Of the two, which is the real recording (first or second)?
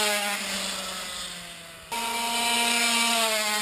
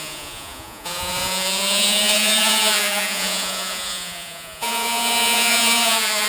first